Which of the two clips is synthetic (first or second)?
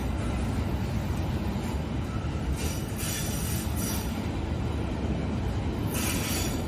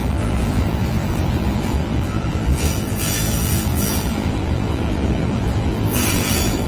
second